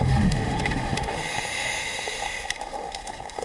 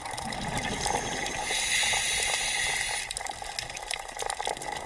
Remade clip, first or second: first